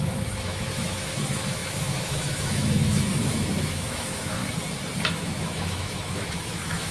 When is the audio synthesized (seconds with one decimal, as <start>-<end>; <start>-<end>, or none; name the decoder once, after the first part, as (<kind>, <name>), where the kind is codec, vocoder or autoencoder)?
0.0-4.4 (autoencoder, DAC-VAE); 5.1-6.9